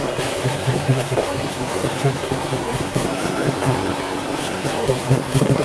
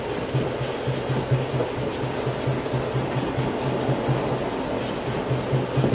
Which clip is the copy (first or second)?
first